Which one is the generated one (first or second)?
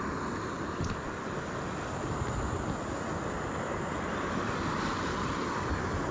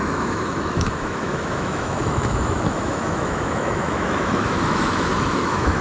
second